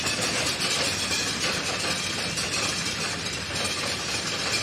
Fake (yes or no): no